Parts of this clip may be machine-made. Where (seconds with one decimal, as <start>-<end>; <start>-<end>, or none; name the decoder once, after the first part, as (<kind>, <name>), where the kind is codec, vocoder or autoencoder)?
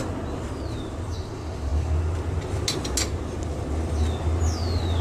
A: none